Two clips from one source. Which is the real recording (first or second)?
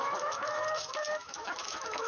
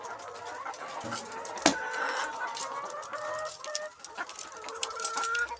second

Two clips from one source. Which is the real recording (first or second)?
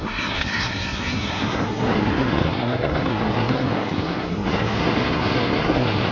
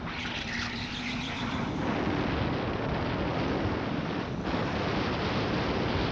second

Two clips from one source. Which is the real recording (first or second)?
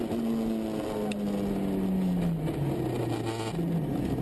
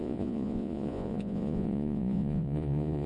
first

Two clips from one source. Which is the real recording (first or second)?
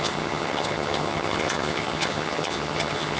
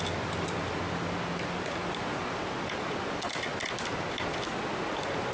second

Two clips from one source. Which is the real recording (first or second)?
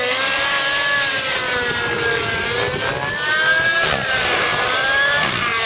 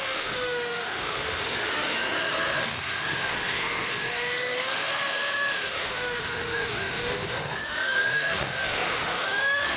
first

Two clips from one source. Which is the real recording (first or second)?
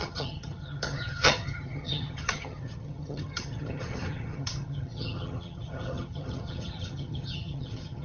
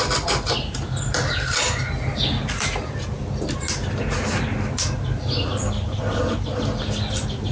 second